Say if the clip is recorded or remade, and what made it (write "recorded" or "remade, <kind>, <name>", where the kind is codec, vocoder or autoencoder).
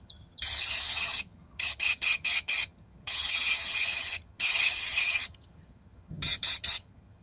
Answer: remade, vocoder, HiFi-GAN